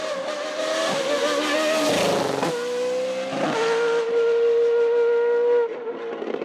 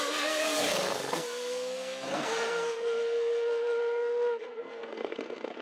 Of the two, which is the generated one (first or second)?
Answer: second